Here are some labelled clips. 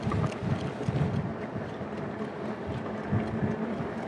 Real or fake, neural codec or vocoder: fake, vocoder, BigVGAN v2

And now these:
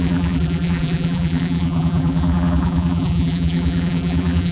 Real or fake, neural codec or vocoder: fake, vocoder, BigVGAN v2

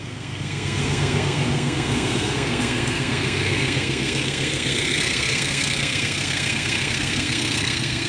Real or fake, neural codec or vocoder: fake, codec, SNAC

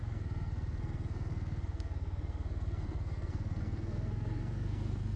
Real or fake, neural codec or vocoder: fake, codec, SNAC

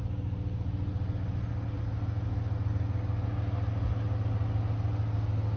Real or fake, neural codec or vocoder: real